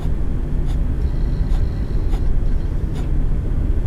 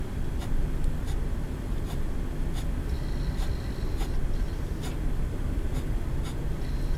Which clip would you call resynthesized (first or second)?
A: second